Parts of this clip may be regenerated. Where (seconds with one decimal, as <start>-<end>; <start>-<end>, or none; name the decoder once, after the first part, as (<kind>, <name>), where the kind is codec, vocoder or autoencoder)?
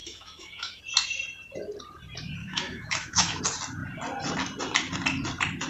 0.0-0.8 (autoencoder, DAC-VAE); 2.4-3.4